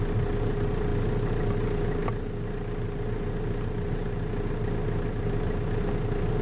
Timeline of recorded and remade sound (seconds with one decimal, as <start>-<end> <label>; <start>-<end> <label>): 0.0-6.4 recorded